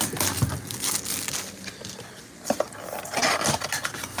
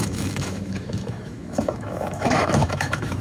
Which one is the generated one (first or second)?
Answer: second